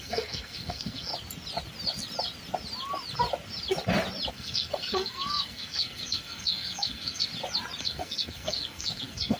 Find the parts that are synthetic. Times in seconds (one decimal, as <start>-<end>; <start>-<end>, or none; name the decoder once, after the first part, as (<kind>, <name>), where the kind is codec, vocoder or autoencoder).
0.0-1.1 (codec, SNAC); 4.3-7.3; 7.8-9.4